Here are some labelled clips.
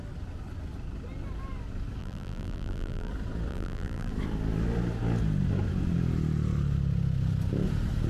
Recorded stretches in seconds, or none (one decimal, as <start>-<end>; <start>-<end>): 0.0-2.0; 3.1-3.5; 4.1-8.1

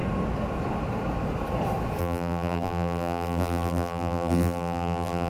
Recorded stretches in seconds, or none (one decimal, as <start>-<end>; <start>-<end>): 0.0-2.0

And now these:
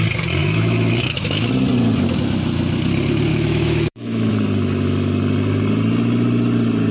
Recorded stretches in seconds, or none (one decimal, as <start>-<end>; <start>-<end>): 0.0-0.4; 1.5-3.3; 4.3-6.9

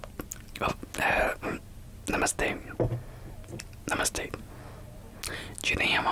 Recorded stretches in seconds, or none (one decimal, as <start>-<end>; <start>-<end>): 0.0-6.1